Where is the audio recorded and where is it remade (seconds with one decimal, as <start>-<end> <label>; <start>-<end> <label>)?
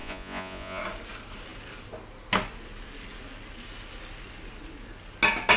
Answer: 0.0-0.8 remade; 0.8-5.6 recorded